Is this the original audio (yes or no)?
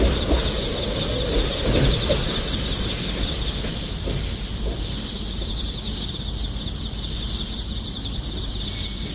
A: yes